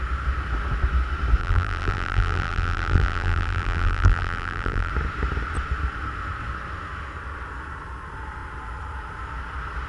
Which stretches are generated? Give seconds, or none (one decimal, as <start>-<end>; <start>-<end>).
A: 1.4-4.9